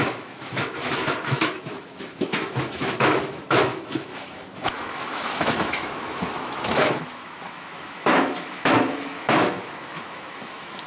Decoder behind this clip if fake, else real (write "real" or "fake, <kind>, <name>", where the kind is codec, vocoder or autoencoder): fake, autoencoder, DAC-VAE